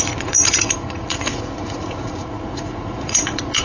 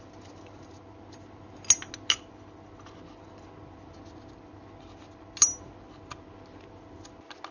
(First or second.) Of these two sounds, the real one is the second